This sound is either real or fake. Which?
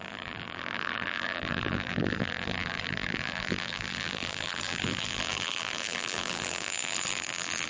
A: fake